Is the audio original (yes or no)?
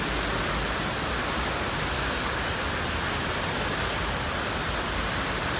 yes